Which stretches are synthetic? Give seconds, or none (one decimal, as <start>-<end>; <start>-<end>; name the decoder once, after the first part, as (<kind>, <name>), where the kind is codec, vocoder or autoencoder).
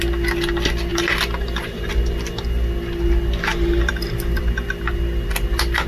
3.5-4.4 (vocoder, BigVGAN v2)